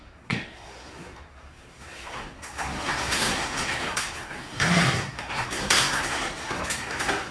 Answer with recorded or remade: remade